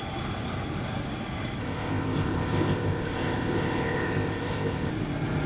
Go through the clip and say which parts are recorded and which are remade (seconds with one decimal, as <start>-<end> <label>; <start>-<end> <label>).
0.0-1.6 recorded; 1.6-4.9 remade; 4.9-5.5 recorded